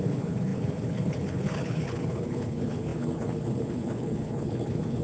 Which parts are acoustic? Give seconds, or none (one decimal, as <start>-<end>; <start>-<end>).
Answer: none